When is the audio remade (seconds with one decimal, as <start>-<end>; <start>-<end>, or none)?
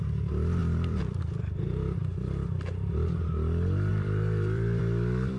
0.6-1.2; 2.0-2.6; 3.9-4.8